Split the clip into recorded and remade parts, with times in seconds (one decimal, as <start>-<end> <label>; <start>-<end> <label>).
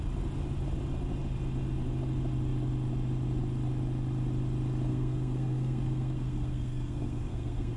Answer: 0.0-4.9 recorded; 4.9-7.8 remade